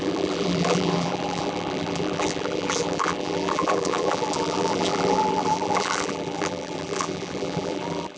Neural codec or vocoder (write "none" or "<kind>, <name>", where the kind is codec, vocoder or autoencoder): vocoder, BigVGAN v2